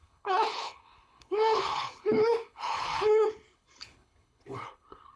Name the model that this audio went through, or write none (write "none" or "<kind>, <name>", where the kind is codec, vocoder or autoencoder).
codec, HILCodec